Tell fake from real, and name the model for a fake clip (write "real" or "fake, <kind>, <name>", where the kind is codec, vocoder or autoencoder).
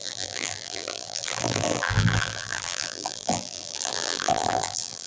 fake, vocoder, BigVGAN v2